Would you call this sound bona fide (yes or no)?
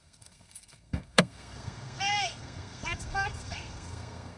no